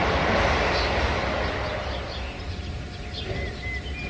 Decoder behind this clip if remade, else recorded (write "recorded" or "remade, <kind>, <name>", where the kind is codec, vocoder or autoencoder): recorded